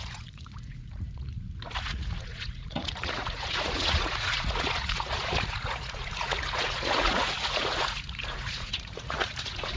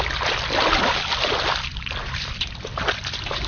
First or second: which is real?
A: second